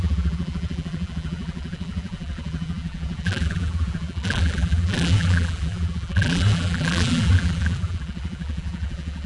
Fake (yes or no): yes